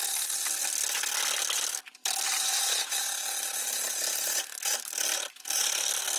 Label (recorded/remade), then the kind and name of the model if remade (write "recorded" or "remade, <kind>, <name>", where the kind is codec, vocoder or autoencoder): recorded